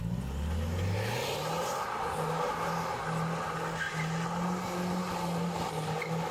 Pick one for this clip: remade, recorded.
recorded